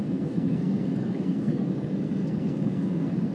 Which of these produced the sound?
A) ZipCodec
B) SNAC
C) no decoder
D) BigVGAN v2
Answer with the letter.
B